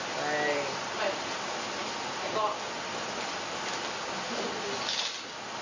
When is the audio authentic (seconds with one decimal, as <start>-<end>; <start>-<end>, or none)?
0.0-5.6